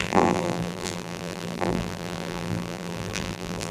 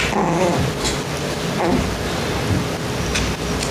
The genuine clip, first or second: second